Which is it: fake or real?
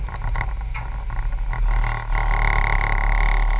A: real